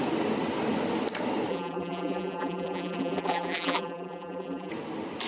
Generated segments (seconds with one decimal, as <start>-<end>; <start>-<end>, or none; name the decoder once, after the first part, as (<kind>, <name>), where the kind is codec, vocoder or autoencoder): 1.5-4.7 (vocoder, BigVGAN v2)